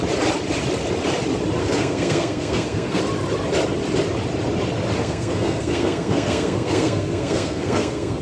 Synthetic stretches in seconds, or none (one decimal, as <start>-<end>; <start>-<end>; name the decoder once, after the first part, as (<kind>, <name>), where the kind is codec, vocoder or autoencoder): 1.6-3.0 (codec, SNAC); 5.0-8.2